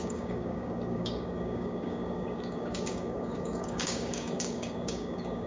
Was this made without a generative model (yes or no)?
no